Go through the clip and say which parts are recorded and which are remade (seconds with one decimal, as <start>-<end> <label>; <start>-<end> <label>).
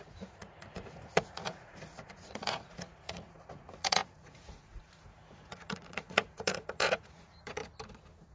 0.0-7.6 remade; 7.6-8.3 recorded